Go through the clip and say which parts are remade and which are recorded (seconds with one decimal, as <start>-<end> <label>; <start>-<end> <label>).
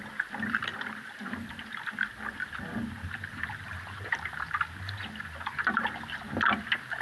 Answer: 0.0-7.0 recorded